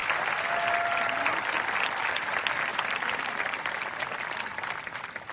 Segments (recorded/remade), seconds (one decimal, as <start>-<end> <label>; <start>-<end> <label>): 0.0-2.7 recorded; 2.7-4.4 remade; 4.4-5.3 recorded